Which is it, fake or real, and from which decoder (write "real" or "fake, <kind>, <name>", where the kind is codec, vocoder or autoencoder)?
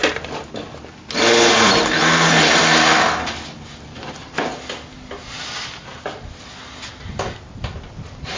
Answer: real